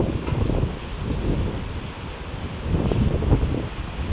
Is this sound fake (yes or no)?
no